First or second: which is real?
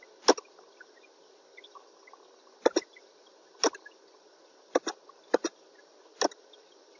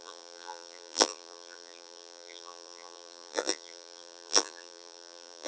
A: first